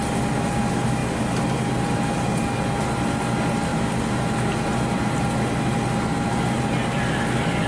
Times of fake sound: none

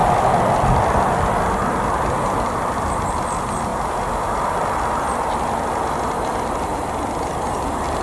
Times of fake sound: none